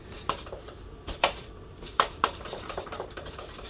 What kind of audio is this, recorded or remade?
remade